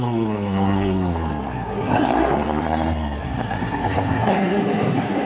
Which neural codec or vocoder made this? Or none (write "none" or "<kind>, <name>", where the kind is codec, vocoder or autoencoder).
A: codec, SNAC